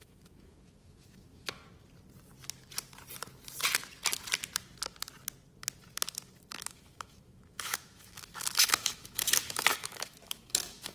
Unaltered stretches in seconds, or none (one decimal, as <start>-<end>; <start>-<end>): 1.6-6.5